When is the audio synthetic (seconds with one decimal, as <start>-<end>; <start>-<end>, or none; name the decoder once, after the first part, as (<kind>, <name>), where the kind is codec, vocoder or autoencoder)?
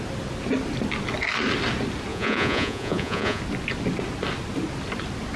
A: 2.1-3.4 (vocoder, Vocos)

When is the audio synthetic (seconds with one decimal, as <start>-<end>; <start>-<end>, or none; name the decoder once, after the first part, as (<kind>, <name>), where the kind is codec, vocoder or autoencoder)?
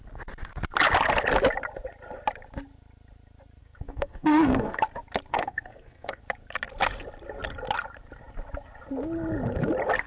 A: 3.6-4.8 (codec, SNAC); 5.3-6.2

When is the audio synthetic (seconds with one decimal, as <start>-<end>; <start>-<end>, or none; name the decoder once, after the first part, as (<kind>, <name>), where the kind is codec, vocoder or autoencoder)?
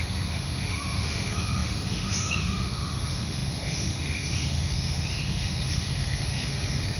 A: 0.0-7.0 (autoencoder, DAC-VAE)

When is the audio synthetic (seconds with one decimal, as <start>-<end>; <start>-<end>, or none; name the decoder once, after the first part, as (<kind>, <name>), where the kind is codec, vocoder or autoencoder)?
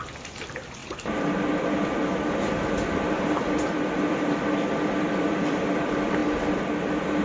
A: 0.0-6.2 (vocoder, BigVGAN v2); 6.8-7.2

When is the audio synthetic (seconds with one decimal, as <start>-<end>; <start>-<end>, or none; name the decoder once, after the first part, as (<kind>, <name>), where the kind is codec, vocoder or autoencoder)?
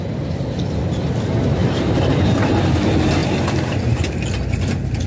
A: none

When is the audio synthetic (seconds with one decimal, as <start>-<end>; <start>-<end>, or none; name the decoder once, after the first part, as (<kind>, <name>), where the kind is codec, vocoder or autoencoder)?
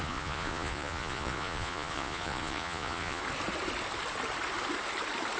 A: 0.0-3.2 (vocoder, Vocos)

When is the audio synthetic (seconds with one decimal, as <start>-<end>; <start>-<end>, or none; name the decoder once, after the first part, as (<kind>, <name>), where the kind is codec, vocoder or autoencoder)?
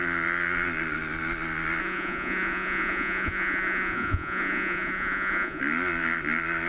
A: 1.8-5.6 (vocoder, Vocos)